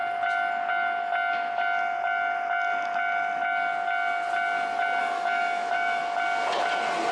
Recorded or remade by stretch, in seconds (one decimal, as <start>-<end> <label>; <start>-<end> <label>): 0.0-5.0 recorded; 5.0-6.0 remade; 6.0-7.1 recorded